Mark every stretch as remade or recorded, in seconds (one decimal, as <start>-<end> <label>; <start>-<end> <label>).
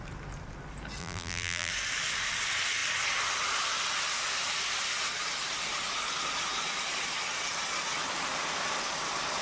0.0-1.0 recorded; 1.0-1.7 remade; 1.7-9.4 recorded